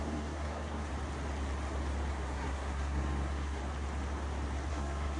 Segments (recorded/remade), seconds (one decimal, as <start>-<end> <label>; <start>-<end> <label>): 0.0-0.9 remade; 0.9-2.1 recorded; 2.1-3.6 remade; 3.6-4.7 recorded; 4.7-5.2 remade